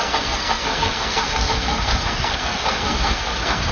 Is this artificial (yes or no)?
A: yes